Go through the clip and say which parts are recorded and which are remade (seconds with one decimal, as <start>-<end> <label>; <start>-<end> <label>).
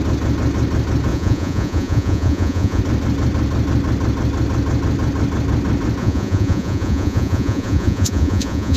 0.0-1.1 recorded; 1.1-2.8 remade; 2.8-6.0 recorded; 6.0-8.8 remade